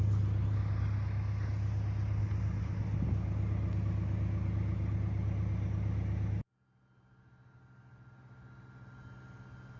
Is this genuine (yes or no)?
yes